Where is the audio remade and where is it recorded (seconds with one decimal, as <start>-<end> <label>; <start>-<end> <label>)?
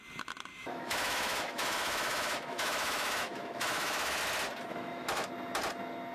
0.0-0.5 recorded; 0.5-4.2 remade; 4.2-4.7 recorded; 4.7-5.3 remade; 5.3-6.1 recorded